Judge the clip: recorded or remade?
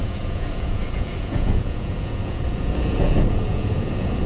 remade